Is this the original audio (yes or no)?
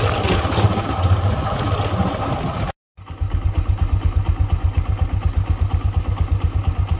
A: yes